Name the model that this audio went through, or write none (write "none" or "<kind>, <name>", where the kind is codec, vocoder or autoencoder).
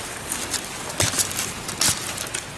none